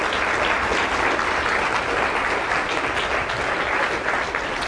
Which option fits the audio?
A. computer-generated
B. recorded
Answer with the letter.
B